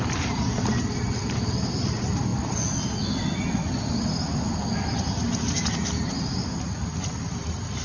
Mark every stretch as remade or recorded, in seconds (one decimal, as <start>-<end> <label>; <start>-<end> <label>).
0.0-7.8 recorded